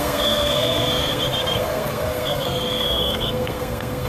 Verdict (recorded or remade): remade